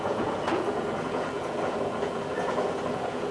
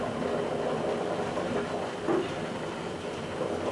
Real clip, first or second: second